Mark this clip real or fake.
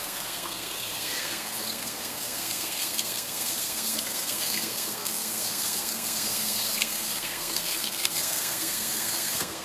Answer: fake